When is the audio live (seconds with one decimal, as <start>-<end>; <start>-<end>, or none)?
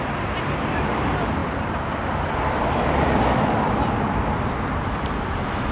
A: 0.0-5.7